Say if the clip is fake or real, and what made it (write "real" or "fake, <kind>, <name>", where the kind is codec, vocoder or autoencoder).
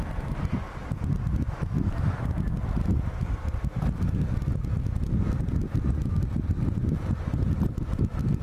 real